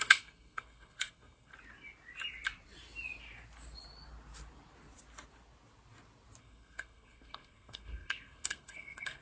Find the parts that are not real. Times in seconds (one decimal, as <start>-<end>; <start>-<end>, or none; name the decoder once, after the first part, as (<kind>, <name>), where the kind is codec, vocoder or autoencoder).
0.0-1.5 (codec, SNAC); 6.4-9.2